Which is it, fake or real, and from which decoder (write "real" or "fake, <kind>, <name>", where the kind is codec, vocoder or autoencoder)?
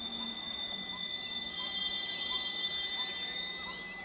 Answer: real